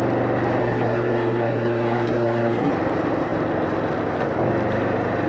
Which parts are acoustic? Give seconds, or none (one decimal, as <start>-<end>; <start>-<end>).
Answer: 0.0-0.6; 2.7-5.3